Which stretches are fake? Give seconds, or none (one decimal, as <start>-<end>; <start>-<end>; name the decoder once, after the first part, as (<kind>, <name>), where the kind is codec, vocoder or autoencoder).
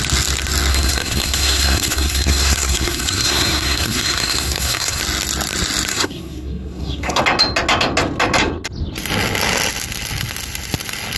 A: 0.7-5.0 (codec, SNAC); 5.9-7.2